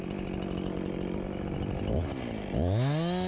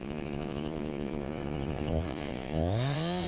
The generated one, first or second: second